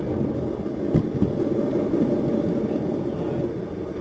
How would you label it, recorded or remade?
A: recorded